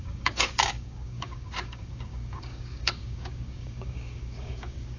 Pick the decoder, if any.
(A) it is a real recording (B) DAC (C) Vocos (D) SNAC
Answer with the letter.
B